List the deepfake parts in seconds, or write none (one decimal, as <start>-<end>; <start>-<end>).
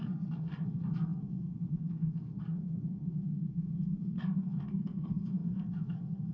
0.0-6.3